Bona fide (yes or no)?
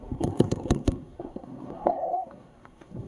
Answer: no